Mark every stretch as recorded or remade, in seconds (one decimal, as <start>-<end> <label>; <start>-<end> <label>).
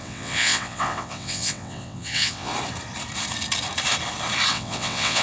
0.0-2.5 remade; 2.5-4.5 recorded; 4.5-5.2 remade